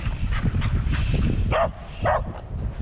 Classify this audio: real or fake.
real